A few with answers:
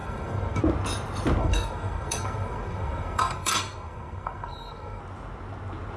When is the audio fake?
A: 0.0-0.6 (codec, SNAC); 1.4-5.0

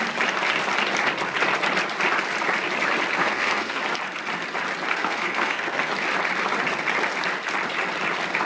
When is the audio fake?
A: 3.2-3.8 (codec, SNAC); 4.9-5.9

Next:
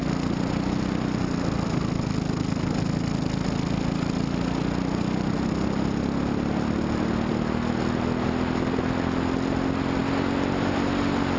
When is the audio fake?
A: none

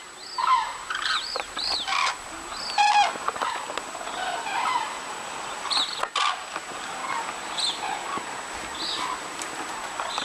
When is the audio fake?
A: 0.5-2.0 (vocoder, BigVGAN v2)